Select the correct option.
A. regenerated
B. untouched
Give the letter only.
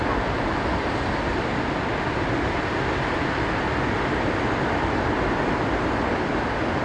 B